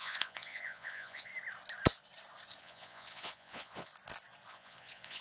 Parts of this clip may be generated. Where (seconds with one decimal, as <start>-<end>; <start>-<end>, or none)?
0.0-1.3; 2.6-3.9; 4.5-5.2